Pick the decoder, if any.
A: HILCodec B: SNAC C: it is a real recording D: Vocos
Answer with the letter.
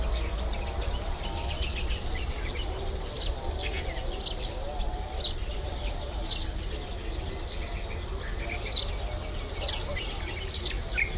C